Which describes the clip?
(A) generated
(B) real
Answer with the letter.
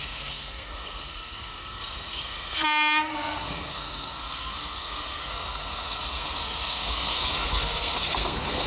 A